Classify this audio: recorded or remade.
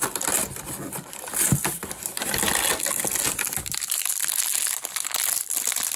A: recorded